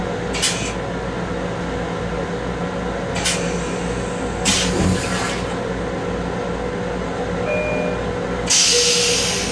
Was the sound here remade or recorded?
recorded